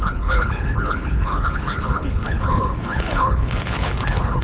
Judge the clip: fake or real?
fake